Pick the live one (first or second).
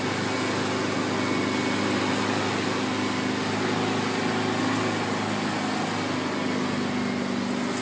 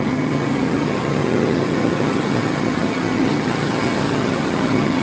first